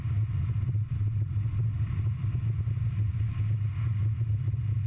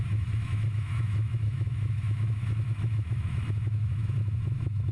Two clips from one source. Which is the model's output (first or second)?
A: second